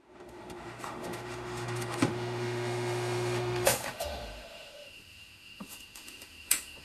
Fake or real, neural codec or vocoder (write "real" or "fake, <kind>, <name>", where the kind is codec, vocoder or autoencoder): fake, autoencoder, DAC-VAE